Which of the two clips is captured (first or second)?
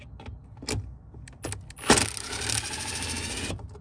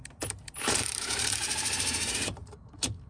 first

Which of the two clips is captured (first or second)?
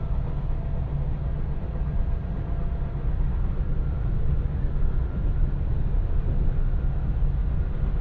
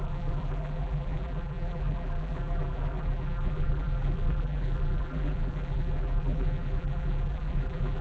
first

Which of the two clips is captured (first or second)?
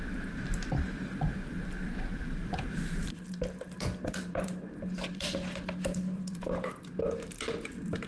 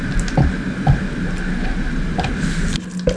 second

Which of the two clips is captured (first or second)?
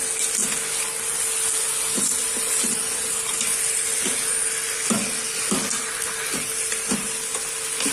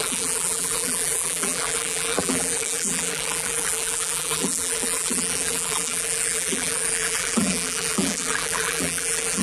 first